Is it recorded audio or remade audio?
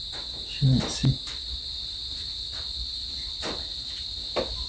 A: recorded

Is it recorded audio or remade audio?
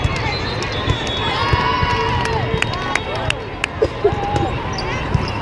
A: recorded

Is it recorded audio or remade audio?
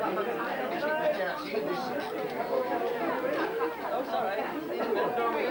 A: recorded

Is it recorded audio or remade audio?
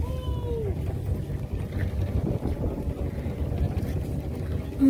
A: recorded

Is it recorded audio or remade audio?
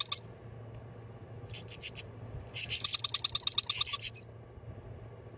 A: recorded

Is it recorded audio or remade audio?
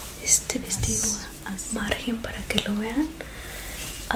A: remade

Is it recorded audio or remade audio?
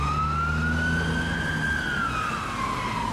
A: recorded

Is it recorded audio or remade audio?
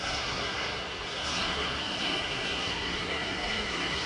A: remade